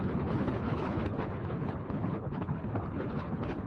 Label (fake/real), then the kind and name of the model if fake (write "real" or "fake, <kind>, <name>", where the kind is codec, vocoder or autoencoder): fake, codec, HILCodec